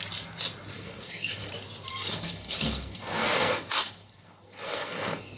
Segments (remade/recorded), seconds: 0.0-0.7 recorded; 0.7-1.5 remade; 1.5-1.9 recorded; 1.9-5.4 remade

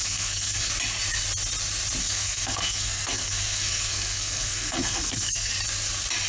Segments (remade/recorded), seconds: 0.0-0.7 remade; 0.7-2.0 recorded; 2.0-5.5 remade; 5.5-6.3 recorded